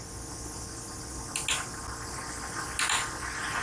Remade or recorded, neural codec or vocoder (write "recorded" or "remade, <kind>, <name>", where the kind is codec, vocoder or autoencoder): recorded